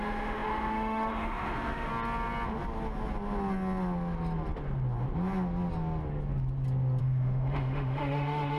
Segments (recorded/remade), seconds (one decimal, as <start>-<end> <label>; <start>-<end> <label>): 0.0-1.9 remade; 1.9-7.0 recorded; 7.0-8.6 remade